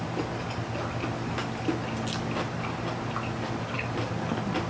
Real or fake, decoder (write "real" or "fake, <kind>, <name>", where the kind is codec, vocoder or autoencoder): real